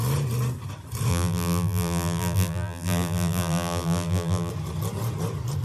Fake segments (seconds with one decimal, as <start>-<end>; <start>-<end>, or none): 1.1-4.5